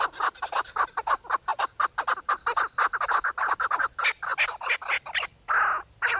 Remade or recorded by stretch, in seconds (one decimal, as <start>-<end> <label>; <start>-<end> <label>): 0.0-6.2 recorded